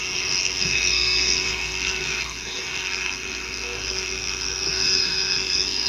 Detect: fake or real fake